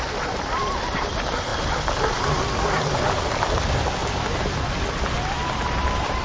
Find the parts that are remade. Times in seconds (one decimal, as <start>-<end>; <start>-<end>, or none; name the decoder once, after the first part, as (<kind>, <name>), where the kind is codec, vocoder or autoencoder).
0.0-6.2 (vocoder, BigVGAN v2)